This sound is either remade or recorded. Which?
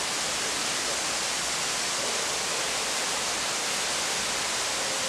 remade